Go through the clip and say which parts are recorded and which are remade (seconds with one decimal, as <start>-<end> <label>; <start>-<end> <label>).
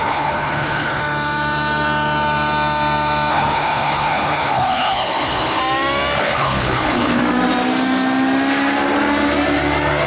0.0-1.0 remade; 1.0-3.3 recorded; 3.3-5.6 remade; 5.6-6.2 recorded; 6.2-7.2 remade; 7.2-10.1 recorded